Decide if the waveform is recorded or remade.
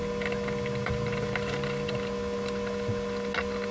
recorded